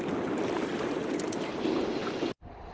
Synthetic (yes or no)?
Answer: no